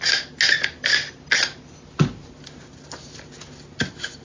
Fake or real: real